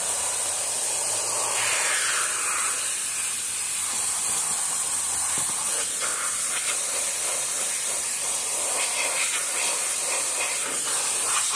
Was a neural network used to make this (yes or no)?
no